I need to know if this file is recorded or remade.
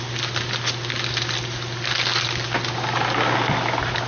recorded